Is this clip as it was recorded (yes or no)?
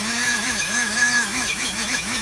no